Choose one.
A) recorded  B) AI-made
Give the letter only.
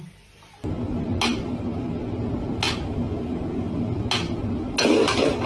A